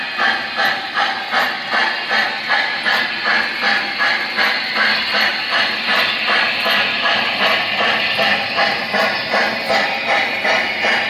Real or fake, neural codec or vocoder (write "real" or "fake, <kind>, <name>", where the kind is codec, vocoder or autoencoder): real